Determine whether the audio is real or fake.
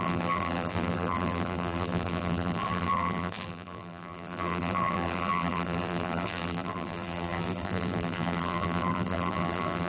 fake